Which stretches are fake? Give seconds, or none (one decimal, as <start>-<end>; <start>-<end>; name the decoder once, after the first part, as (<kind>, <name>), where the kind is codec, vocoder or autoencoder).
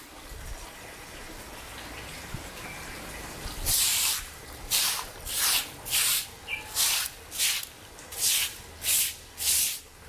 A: 3.9-4.9 (vocoder, BigVGAN v2)